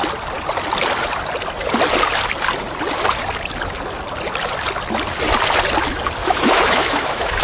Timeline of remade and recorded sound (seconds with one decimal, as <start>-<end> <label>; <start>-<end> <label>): 0.0-6.2 recorded; 6.2-7.4 remade